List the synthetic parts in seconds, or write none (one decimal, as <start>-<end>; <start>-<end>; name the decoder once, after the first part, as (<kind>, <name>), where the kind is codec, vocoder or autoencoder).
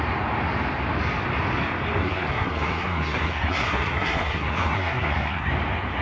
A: 2.0-5.5 (codec, SNAC)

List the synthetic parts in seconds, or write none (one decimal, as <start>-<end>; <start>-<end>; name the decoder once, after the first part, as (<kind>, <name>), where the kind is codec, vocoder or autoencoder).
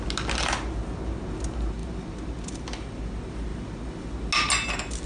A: none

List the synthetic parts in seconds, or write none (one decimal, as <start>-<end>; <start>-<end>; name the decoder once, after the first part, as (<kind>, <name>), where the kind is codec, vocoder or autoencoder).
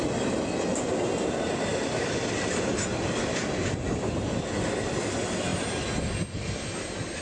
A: none